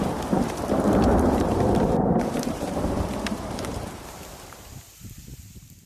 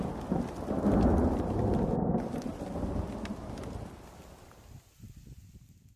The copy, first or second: first